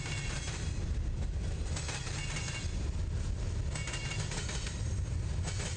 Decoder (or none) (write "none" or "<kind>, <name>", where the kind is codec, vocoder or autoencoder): none